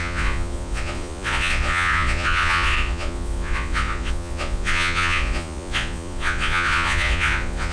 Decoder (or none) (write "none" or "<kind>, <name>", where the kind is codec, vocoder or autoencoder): vocoder, Vocos